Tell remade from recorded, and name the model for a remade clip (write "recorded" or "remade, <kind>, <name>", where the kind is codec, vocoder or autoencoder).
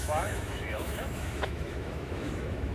remade, autoencoder, DAC-VAE